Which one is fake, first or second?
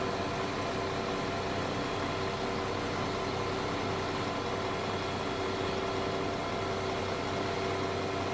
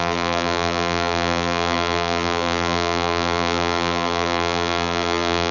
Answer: second